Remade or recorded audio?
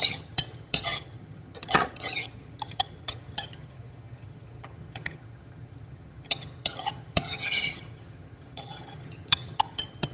remade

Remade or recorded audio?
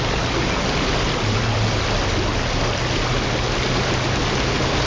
recorded